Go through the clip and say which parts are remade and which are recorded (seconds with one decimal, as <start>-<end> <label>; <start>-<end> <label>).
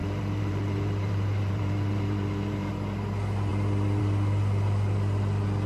0.0-2.7 remade; 2.7-5.7 recorded